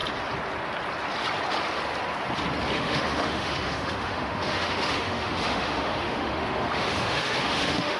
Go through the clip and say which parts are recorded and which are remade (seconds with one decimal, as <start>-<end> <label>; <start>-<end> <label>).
0.0-2.7 recorded; 2.7-8.0 remade